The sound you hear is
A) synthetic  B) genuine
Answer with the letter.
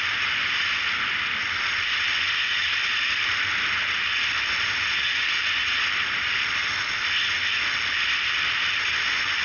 B